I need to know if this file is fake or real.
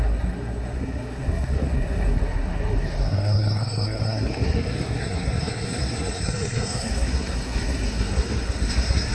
fake